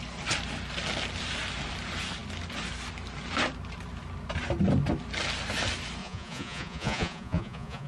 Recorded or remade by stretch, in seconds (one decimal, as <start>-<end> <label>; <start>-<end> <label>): 0.0-6.0 recorded; 6.0-7.9 remade